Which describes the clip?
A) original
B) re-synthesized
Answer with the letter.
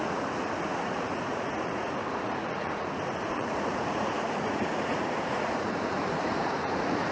B